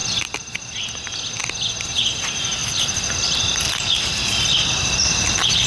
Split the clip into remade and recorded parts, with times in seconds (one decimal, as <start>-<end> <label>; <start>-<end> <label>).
0.0-2.6 recorded; 2.6-5.7 remade